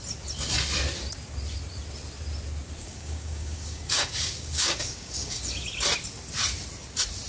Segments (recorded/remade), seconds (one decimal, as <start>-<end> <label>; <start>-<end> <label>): 0.0-2.8 recorded; 2.8-5.4 remade; 5.4-7.3 recorded